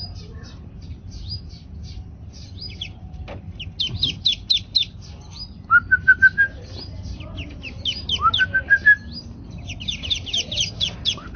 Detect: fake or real real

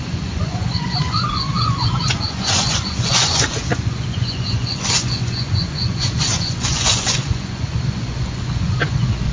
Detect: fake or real fake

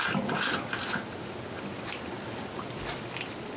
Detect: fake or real real